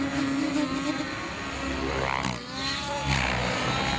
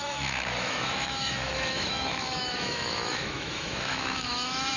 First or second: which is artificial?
second